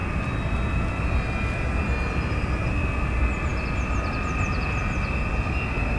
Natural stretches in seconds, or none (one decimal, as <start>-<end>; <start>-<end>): 1.8-6.0